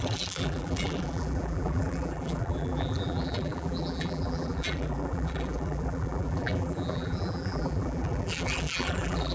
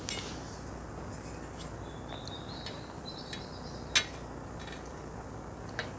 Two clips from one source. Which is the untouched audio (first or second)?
second